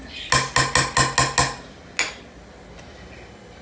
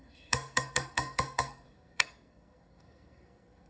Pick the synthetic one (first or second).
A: second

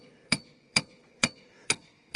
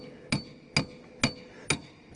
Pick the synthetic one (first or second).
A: first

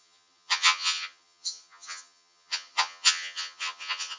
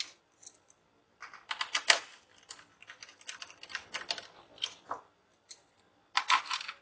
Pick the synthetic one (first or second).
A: first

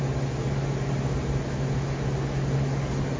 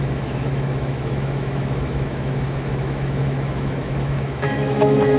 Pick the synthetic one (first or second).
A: second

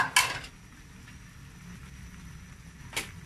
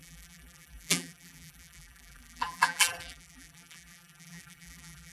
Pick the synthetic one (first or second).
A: second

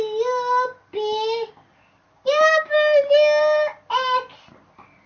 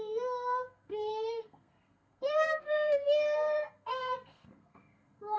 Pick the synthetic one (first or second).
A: second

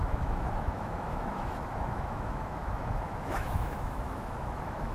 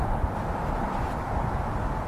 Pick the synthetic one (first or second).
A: first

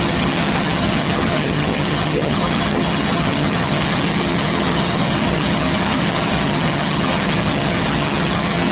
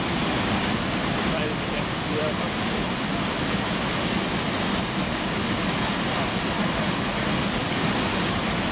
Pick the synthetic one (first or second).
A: first